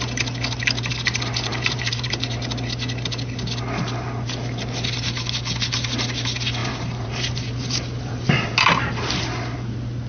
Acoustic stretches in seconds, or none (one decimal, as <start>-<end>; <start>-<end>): 0.0-1.5; 2.1-6.6; 9.2-10.1